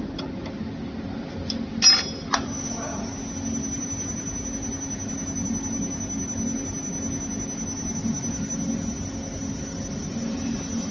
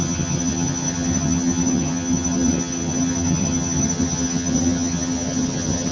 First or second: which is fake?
second